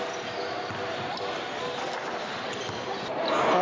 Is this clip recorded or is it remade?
recorded